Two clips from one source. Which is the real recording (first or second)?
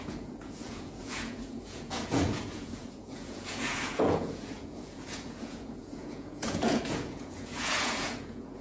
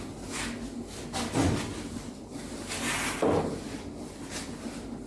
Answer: second